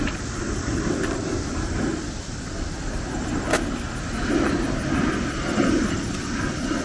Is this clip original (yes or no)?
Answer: no